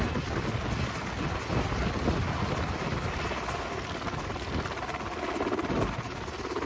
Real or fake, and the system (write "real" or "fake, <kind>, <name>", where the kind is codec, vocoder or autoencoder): real